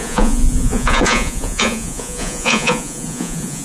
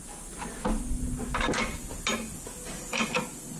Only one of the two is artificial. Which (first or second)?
first